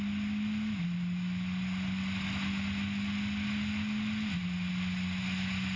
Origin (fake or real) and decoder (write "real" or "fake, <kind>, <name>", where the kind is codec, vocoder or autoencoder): real